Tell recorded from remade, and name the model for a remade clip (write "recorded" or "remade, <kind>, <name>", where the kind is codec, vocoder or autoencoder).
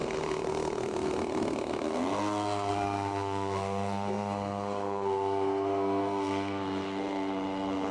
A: remade, codec, SNAC